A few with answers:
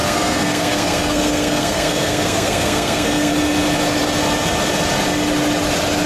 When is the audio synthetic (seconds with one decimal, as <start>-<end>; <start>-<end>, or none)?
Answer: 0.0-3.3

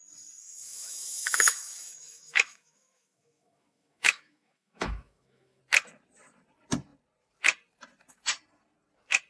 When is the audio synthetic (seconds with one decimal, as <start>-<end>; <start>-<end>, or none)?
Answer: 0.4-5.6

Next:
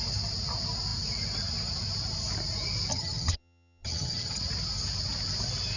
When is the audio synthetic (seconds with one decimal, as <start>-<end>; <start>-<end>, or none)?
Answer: 2.9-4.4

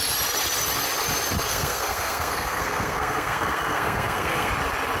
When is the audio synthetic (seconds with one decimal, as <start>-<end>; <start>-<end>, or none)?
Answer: 1.5-4.5

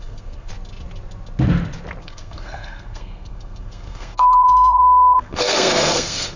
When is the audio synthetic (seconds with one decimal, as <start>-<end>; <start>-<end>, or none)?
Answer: 0.0-0.5; 2.0-6.4